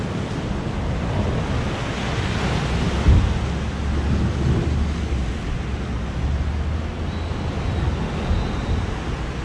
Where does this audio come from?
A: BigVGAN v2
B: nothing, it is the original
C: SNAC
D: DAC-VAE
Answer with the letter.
B